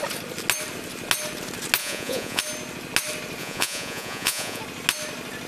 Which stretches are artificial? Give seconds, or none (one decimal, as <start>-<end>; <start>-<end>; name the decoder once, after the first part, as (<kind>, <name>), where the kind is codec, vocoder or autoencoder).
1.8-2.4 (vocoder, Vocos); 3.4-4.6